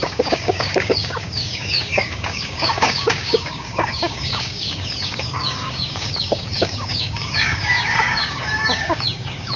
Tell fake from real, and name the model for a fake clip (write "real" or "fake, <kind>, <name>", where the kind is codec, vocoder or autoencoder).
fake, codec, DAC